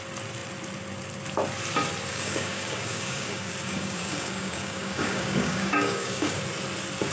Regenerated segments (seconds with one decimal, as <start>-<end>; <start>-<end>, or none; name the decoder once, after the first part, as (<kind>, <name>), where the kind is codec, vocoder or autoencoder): 2.1-6.4 (codec, DAC)